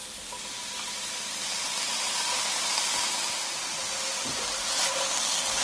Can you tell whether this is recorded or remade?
recorded